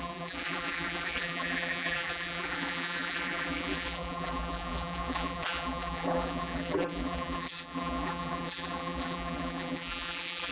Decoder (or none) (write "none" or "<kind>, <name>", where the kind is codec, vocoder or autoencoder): vocoder, BigVGAN v2